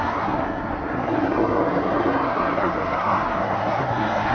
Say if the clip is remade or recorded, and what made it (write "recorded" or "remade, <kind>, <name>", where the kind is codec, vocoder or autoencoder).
remade, codec, SNAC